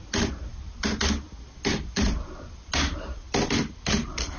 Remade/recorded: recorded